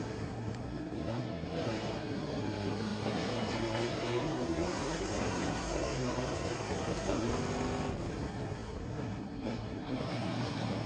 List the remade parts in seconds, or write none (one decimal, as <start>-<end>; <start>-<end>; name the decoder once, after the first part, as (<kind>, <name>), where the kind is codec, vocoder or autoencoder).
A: 0.0-7.3 (codec, SNAC); 8.1-10.9